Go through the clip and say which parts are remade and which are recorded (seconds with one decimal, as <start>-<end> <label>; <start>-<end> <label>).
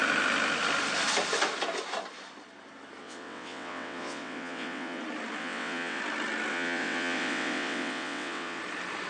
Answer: 0.0-3.0 recorded; 3.0-5.0 remade; 5.0-5.4 recorded; 5.4-6.0 remade; 6.0-6.5 recorded; 6.5-8.6 remade; 8.6-9.1 recorded